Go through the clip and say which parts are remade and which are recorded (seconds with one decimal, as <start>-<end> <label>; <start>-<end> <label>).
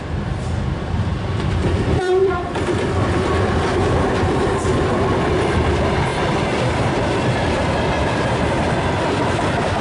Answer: 0.0-4.7 remade; 4.7-5.3 recorded; 5.3-6.1 remade; 6.1-8.0 recorded; 8.0-9.8 remade